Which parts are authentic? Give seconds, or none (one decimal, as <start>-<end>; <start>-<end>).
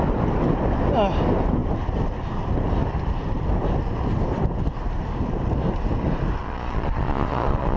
0.0-6.4